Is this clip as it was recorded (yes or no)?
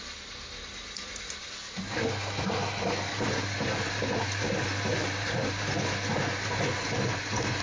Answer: yes